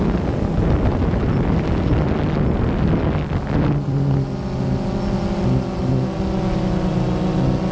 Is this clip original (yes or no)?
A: yes